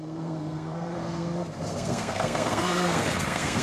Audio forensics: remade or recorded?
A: remade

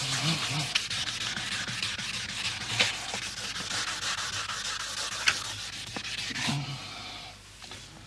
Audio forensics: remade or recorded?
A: recorded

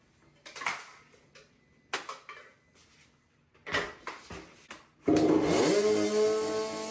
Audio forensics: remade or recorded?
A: recorded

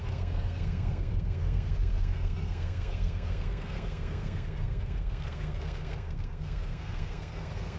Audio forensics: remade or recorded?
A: remade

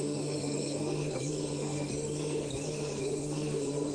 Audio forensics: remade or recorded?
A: remade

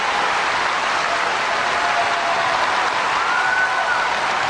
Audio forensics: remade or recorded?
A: recorded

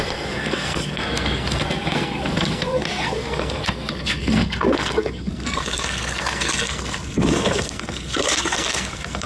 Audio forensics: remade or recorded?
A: remade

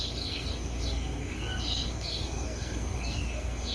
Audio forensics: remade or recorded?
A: remade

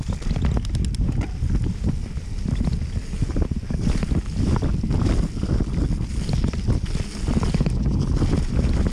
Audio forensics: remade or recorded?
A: recorded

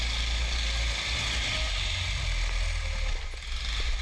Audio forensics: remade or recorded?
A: recorded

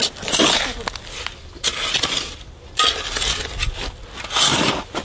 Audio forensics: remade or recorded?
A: recorded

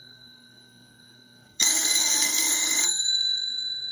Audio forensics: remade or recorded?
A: remade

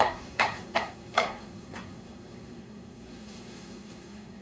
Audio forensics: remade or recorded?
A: remade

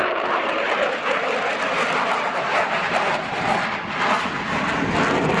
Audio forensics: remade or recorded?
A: recorded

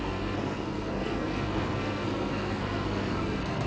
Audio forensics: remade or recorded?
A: remade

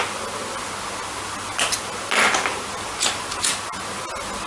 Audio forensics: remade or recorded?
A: recorded